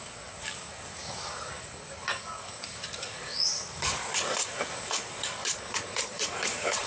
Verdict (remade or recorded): remade